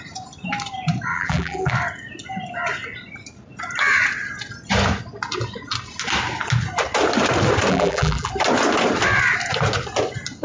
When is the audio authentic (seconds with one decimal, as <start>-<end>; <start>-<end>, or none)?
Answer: 0.0-1.1; 1.7-7.7; 8.3-10.4

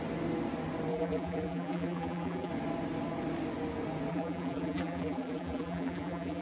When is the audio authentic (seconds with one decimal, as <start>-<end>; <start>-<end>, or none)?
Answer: 0.0-0.9; 2.5-4.1